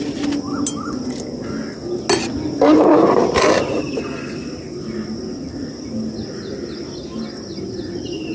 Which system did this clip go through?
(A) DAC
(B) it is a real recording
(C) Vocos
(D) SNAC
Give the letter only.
B